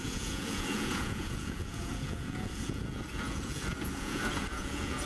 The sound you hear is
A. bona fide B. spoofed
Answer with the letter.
B